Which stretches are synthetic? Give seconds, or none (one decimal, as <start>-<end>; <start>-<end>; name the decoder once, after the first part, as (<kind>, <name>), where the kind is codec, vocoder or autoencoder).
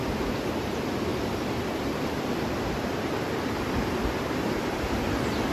1.1-4.2 (vocoder, BigVGAN v2)